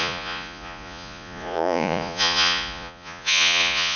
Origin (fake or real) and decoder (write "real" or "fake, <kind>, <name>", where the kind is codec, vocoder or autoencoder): fake, vocoder, Vocos